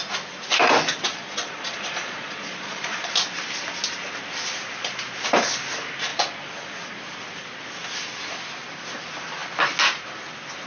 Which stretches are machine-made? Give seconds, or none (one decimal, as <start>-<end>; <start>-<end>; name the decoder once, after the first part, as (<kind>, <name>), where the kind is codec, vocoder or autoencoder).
1.1-3.1 (vocoder, Vocos); 6.1-7.0